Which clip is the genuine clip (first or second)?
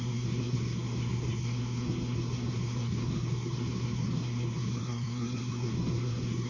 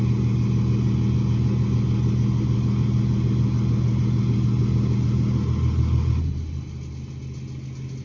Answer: second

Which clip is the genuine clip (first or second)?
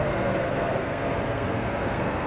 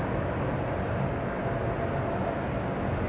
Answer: second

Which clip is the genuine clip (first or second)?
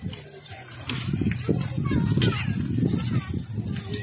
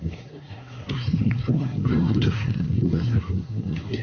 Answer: first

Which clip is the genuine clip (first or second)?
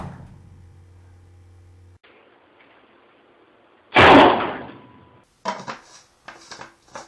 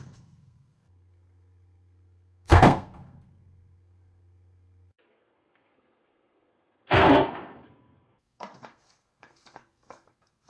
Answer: first